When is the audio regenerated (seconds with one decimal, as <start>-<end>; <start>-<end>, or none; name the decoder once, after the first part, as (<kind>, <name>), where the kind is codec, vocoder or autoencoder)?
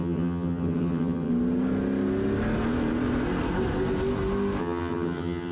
0.0-1.3 (vocoder, HiFi-GAN); 4.6-5.5